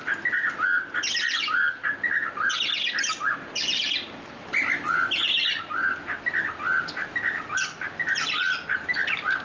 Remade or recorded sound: recorded